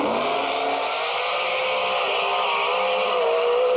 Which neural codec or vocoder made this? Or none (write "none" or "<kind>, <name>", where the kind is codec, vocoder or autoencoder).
none